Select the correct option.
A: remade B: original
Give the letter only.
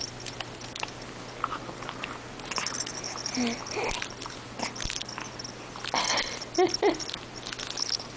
B